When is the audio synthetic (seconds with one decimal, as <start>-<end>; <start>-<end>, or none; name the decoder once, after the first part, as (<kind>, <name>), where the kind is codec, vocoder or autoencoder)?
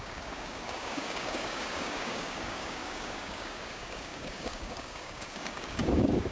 0.0-6.3 (codec, DAC)